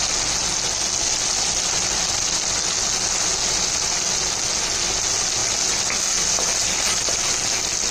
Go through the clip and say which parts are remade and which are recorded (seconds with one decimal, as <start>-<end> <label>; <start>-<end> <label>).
0.0-7.9 recorded